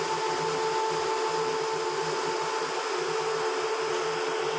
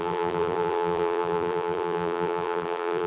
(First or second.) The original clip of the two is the first